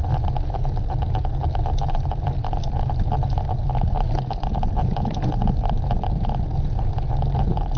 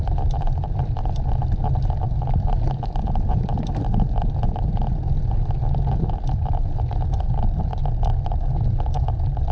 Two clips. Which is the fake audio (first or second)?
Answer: second